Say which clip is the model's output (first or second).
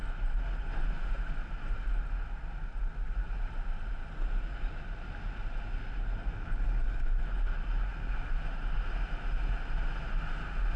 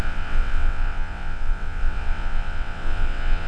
second